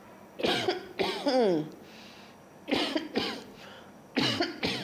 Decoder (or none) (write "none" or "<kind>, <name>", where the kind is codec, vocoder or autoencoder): none